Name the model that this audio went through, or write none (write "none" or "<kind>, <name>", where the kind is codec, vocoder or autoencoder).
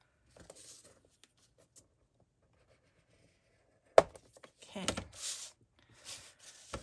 none